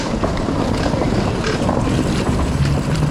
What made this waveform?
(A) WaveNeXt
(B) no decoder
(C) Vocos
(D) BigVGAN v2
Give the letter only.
D